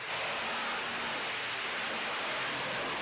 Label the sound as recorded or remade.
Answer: recorded